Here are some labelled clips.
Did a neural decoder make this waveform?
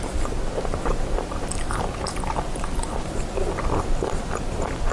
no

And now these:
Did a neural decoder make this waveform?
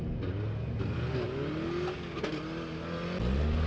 no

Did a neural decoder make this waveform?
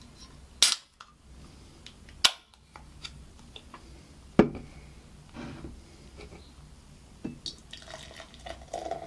no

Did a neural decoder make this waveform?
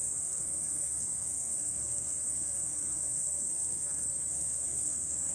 yes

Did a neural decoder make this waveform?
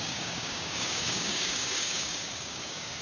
yes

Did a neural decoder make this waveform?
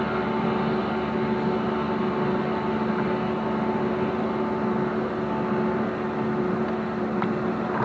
no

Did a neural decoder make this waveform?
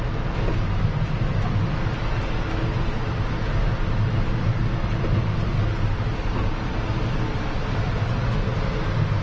no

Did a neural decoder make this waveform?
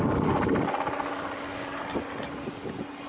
no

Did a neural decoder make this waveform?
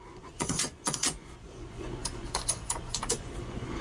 yes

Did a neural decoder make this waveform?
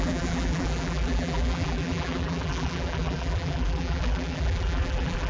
yes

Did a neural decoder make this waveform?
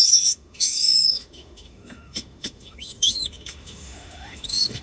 yes